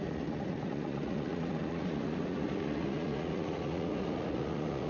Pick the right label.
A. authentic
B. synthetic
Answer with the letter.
B